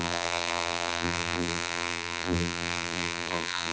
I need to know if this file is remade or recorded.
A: remade